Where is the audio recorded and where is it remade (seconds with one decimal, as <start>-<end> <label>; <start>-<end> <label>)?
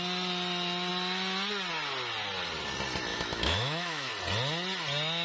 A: 0.0-3.1 recorded; 3.1-4.1 remade; 4.1-5.2 recorded